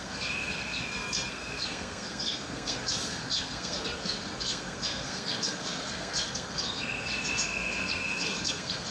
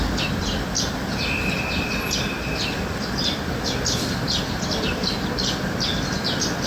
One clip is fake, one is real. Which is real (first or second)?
second